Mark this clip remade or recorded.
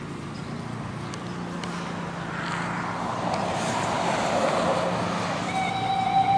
recorded